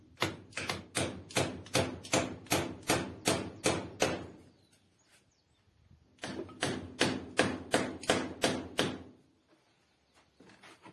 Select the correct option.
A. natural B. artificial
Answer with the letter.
A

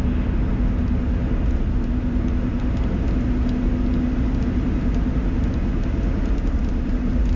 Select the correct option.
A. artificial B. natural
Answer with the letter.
B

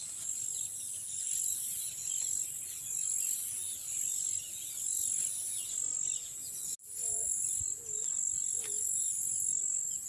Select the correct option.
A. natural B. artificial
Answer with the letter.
A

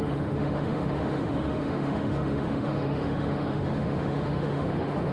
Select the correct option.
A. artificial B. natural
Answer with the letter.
A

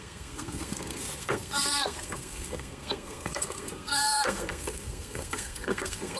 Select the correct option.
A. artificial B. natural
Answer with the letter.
A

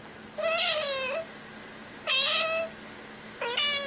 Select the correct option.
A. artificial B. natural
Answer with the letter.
B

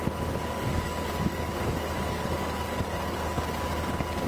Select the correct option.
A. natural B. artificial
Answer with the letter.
B